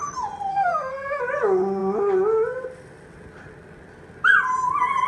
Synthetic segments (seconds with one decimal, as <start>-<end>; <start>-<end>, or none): 0.5-1.2